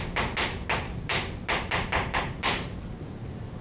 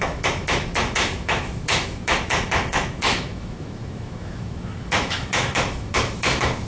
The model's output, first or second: second